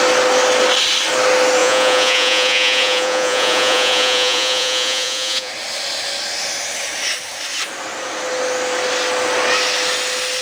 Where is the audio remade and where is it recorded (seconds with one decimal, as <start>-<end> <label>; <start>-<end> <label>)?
0.0-1.6 recorded; 1.6-5.5 remade; 5.5-10.4 recorded